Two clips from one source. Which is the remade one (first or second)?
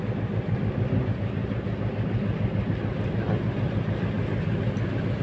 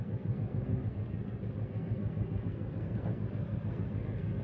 second